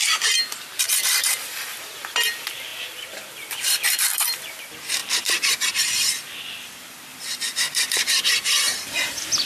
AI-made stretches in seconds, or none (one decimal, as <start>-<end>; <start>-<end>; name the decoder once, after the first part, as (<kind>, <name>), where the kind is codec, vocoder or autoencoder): 0.0-9.5 (vocoder, BigVGAN v2)